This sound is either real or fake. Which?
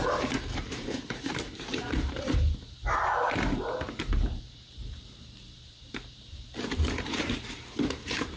fake